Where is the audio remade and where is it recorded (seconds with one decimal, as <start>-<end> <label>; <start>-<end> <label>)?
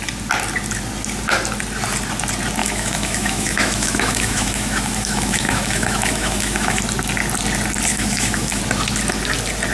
0.0-2.6 recorded; 2.6-6.8 remade; 6.8-7.9 recorded; 7.9-8.6 remade; 8.6-9.7 recorded